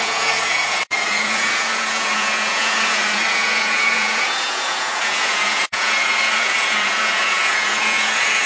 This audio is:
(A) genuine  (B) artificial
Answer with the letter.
B